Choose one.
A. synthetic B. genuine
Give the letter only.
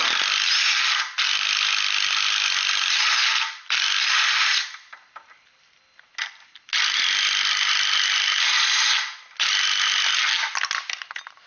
B